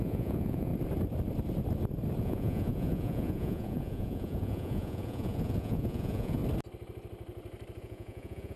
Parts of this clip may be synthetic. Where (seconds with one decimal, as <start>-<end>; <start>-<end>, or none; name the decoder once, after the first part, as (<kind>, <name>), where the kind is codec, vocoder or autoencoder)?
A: 0.0-0.7 (vocoder, Vocos); 2.2-6.4; 7.8-8.6